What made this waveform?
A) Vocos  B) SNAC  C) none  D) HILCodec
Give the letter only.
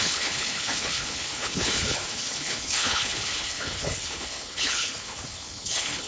D